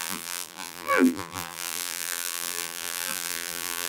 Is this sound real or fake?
fake